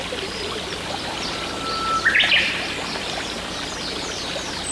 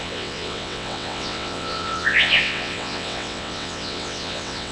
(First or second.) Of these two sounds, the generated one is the second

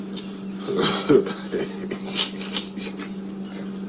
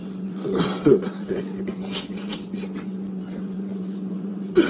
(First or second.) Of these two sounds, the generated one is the second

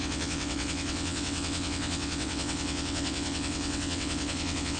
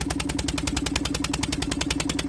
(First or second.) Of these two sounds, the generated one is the first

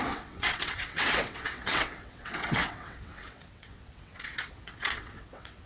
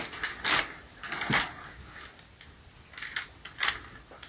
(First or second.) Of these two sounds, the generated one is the first